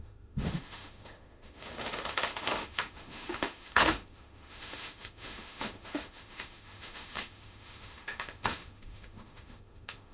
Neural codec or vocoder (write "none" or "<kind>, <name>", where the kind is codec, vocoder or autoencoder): autoencoder, DAC-VAE